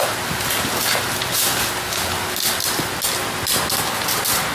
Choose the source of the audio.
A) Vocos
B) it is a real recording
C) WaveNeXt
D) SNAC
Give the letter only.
B